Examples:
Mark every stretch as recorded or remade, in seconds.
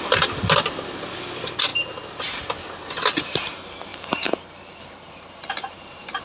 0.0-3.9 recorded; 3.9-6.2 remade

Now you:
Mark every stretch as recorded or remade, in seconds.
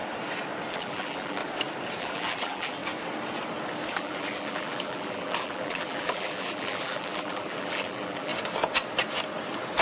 0.0-0.7 recorded; 0.7-1.4 remade; 1.4-2.0 recorded; 2.0-2.8 remade; 2.8-3.9 recorded; 3.9-8.3 remade; 8.3-9.8 recorded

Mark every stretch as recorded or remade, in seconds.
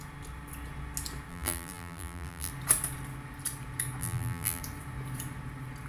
0.0-1.3 recorded; 1.3-2.5 remade; 2.5-4.0 recorded; 4.0-4.6 remade; 4.6-5.9 recorded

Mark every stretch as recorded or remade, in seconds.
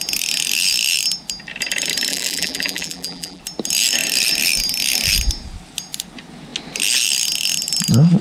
0.0-2.1 recorded; 2.1-3.4 remade; 3.4-8.2 recorded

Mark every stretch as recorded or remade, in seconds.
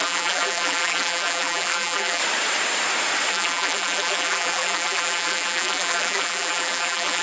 0.0-2.2 remade; 2.2-3.3 recorded; 3.3-7.2 remade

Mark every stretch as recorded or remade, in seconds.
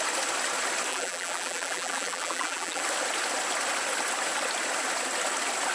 0.0-0.9 recorded; 0.9-2.8 remade; 2.8-5.7 recorded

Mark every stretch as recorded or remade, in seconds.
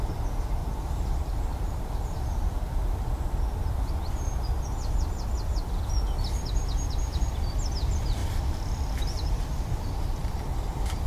0.0-0.6 recorded; 0.6-3.2 remade; 3.2-11.1 recorded